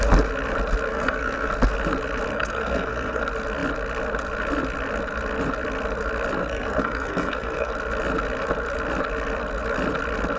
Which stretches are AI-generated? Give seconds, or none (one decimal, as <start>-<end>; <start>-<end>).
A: 0.9-1.5; 2.3-3.2; 6.4-7.7